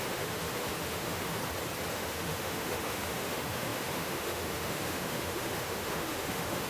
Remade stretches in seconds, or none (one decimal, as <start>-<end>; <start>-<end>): 0.0-1.4; 1.9-6.7